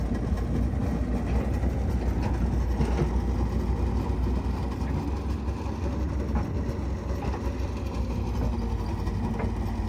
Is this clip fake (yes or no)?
no